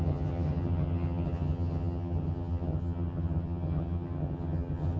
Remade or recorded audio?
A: remade